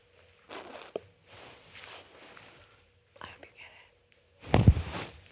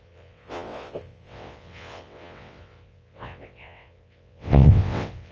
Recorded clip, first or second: first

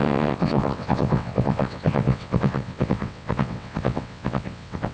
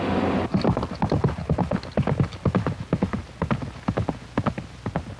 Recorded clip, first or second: second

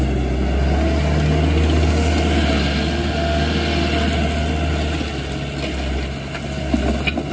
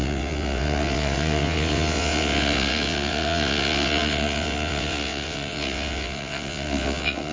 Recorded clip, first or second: first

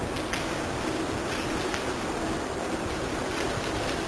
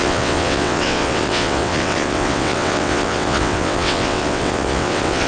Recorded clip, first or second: first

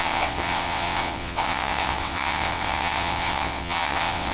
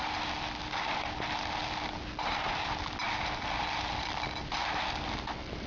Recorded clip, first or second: second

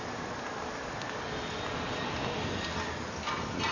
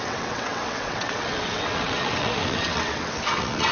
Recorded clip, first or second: first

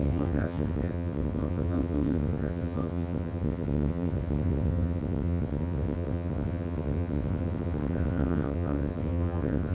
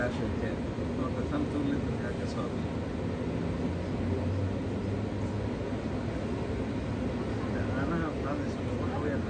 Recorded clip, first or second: second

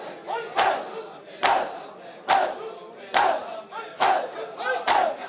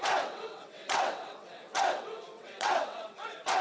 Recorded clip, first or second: first